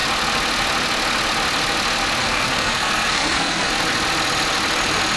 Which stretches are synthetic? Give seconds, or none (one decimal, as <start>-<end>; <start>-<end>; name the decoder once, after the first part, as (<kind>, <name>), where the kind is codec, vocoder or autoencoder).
2.2-3.7 (codec, SNAC)